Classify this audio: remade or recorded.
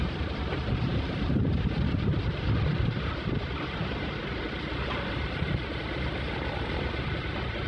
recorded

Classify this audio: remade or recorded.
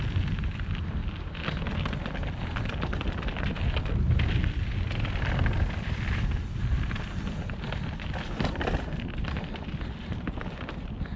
recorded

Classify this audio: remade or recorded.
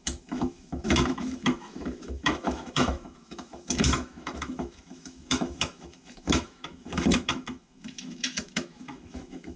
remade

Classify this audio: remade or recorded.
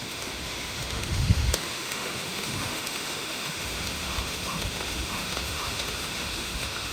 remade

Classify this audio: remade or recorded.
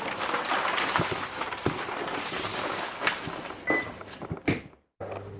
recorded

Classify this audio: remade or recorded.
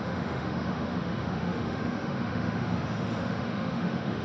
remade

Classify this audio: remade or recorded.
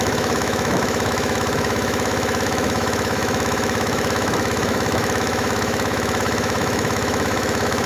remade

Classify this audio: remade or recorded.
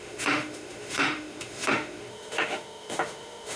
remade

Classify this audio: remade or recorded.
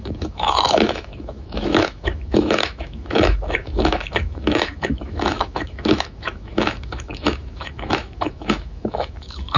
remade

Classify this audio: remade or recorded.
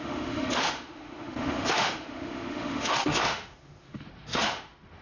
remade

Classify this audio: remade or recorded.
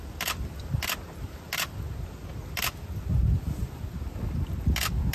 recorded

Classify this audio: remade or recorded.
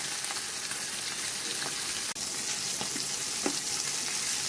recorded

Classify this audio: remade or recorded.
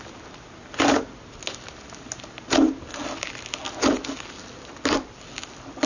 recorded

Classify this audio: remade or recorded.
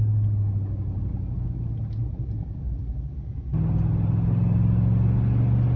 recorded